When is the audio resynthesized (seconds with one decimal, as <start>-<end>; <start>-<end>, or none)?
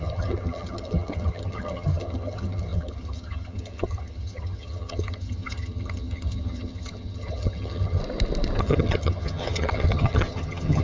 0.0-8.0; 8.6-10.8